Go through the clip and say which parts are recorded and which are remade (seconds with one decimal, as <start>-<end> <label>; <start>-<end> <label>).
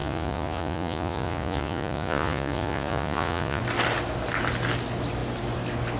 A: 0.0-3.6 remade; 3.6-6.0 recorded